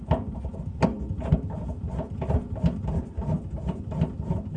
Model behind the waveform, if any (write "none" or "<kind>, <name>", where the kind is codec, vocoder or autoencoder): none